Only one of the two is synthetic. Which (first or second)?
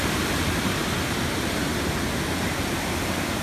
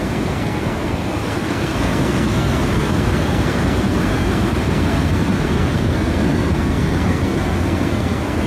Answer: second